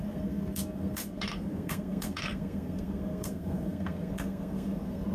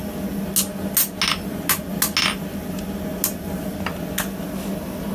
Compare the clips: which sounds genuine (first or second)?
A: second